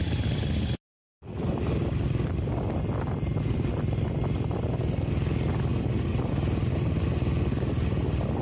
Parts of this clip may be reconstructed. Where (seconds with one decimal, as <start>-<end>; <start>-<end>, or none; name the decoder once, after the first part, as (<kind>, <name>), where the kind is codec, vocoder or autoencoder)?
none